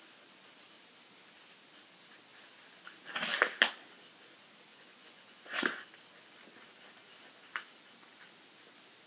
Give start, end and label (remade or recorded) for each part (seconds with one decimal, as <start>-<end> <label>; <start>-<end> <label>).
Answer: 0.0-4.7 recorded; 4.7-5.9 remade; 5.9-9.1 recorded